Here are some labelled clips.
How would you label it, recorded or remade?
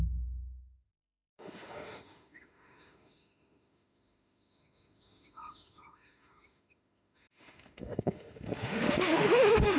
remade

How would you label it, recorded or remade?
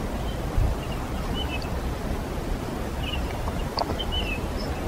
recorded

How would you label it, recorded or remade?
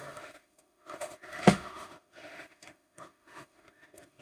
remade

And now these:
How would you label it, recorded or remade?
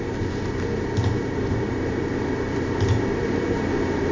recorded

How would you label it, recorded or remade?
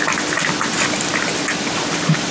recorded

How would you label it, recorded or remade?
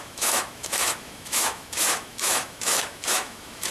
remade